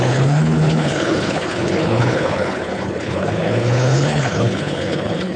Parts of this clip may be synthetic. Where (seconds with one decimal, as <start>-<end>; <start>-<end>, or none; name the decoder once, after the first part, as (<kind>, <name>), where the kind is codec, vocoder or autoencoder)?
0.0-5.4 (codec, HILCodec)